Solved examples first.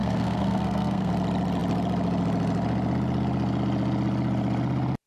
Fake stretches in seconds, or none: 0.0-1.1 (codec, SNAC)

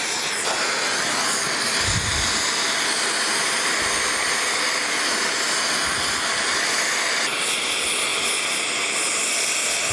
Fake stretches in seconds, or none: none

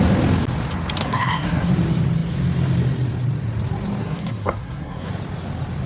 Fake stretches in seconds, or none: 1.0-1.7 (codec, SNAC); 4.0-5.1

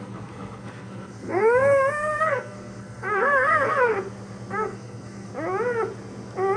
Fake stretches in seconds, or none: 0.0-3.9 (codec, SNAC); 4.5-5.3